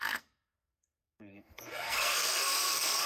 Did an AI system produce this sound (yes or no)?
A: yes